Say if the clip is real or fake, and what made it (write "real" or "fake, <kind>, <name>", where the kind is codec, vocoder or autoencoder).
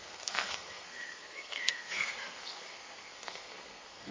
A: fake, codec, SNAC